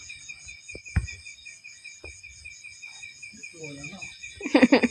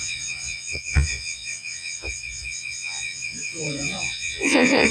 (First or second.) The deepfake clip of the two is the second